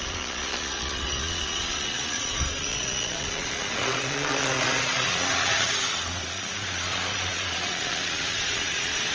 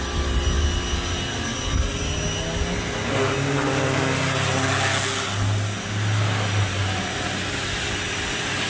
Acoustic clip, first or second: second